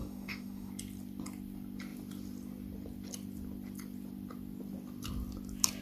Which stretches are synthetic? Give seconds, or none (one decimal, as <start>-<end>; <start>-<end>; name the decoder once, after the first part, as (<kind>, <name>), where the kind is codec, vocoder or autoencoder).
0.0-0.7 (autoencoder, DAC-VAE)